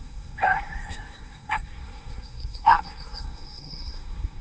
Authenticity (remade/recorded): remade